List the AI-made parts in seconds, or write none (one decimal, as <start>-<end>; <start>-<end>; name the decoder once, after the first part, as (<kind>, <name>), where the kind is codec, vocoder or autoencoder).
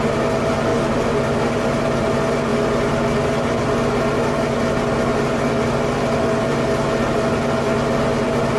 none